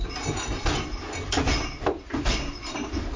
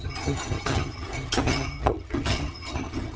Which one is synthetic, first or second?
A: second